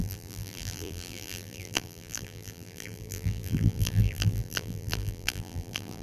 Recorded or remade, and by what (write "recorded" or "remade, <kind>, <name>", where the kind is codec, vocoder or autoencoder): remade, vocoder, BigVGAN v2